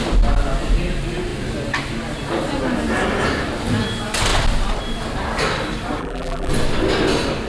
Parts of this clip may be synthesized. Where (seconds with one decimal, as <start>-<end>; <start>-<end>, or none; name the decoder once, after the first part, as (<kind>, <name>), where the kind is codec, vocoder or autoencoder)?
6.0-6.5 (vocoder, BigVGAN v2)